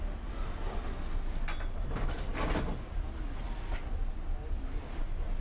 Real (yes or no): yes